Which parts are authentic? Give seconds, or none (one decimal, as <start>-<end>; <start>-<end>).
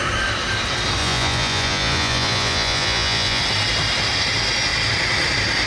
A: 0.0-1.0; 3.4-5.7